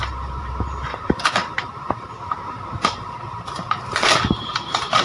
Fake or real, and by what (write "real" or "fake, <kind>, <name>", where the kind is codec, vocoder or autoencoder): fake, vocoder, BigVGAN v2